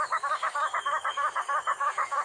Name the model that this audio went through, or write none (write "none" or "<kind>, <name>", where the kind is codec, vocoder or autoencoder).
codec, DAC